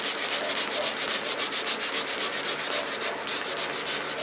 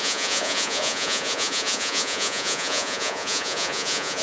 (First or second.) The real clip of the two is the first